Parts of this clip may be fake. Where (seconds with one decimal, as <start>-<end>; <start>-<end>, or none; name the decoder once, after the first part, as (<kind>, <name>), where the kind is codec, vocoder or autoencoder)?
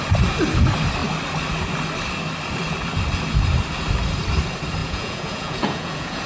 4.8-6.3 (vocoder, Vocos)